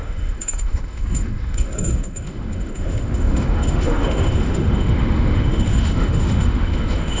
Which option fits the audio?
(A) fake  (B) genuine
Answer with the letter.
A